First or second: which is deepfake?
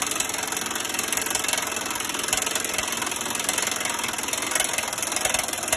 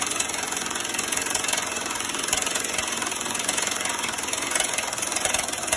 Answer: second